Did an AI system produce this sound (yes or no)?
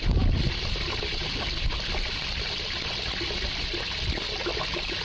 no